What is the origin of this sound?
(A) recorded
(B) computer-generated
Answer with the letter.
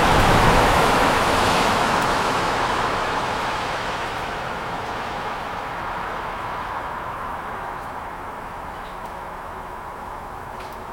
B